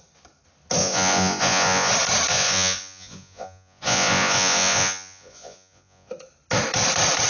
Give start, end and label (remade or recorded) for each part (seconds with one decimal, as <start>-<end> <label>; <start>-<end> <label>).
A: 0.0-0.8 recorded; 0.8-1.9 remade; 1.9-2.3 recorded; 2.3-6.1 remade; 6.1-7.3 recorded